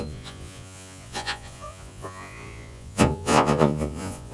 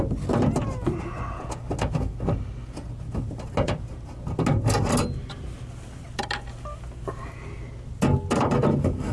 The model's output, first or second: first